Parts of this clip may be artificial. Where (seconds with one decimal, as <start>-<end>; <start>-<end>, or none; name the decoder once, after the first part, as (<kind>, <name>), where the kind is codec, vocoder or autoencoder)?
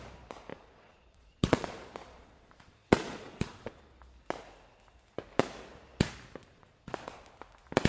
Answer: 0.5-3.8 (vocoder, Vocos); 6.4-7.2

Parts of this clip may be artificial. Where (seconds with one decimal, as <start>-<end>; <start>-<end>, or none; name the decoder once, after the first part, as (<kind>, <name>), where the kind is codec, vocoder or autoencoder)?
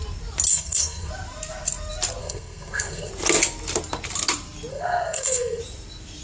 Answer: 0.5-1.1 (codec, SNAC); 2.2-3.1; 4.7-5.6